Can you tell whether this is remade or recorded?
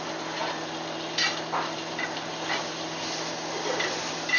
remade